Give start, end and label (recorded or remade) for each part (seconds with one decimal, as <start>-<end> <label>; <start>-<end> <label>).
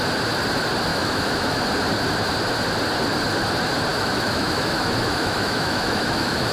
0.0-0.9 recorded; 0.9-1.7 remade; 1.7-3.9 recorded; 3.9-6.5 remade